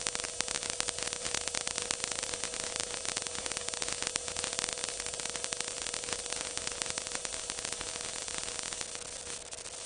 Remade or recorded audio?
recorded